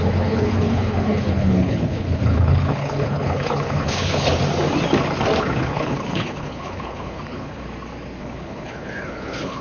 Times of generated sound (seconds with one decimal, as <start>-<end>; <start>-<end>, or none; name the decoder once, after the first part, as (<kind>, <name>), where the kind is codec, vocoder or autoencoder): 0.0-4.4 (codec, HILCodec); 5.4-7.6; 8.2-9.6